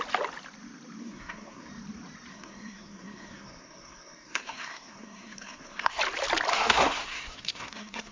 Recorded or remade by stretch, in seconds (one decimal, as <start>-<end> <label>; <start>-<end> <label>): 0.0-1.0 recorded; 1.0-1.7 remade; 1.7-2.3 recorded; 2.3-6.0 remade; 6.0-6.5 recorded; 6.5-8.1 remade